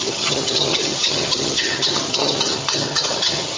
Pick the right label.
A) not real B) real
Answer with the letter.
A